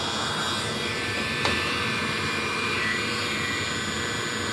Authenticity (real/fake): real